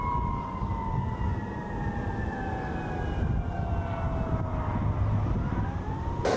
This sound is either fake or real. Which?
real